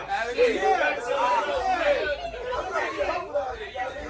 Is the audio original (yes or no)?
yes